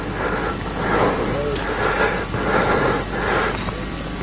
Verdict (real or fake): real